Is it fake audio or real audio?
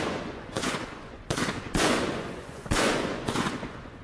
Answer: fake